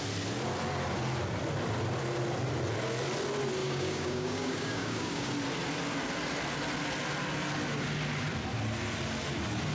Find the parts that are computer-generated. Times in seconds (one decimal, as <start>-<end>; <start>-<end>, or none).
3.6-5.3